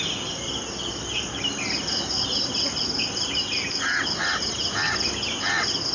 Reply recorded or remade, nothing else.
recorded